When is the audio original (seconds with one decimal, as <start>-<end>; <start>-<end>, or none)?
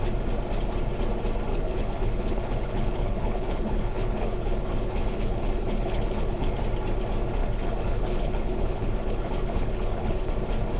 0.0-1.5; 6.6-7.4; 10.3-10.8